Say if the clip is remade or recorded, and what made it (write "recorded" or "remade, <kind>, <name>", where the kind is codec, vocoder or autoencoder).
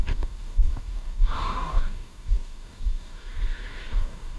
remade, codec, DAC